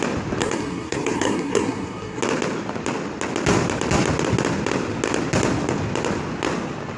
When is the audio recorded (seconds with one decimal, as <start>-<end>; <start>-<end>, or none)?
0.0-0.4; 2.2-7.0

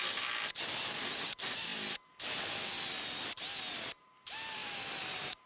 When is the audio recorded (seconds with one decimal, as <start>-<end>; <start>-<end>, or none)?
0.0-5.5

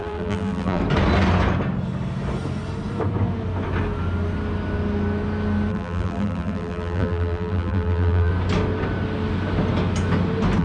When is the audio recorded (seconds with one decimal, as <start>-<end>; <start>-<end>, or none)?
0.8-5.7; 8.3-10.6